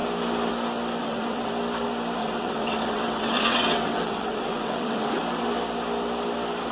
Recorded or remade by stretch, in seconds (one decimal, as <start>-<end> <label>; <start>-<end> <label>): 0.0-1.0 recorded; 1.0-1.5 remade; 1.5-2.2 recorded; 2.2-5.2 remade; 5.2-6.7 recorded